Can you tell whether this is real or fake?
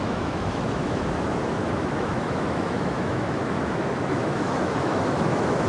fake